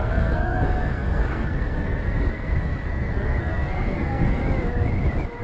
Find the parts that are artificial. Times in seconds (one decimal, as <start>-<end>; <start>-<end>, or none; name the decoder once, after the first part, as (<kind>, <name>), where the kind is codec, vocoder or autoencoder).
0.0-4.4 (codec, SNAC)